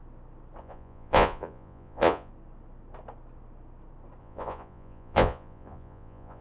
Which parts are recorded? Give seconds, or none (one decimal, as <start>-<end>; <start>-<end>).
0.0-0.6; 2.3-4.2